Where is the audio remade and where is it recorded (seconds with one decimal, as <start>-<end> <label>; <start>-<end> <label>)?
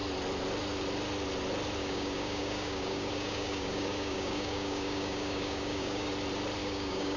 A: 0.0-1.8 recorded; 1.8-6.1 remade; 6.1-6.6 recorded; 6.6-7.2 remade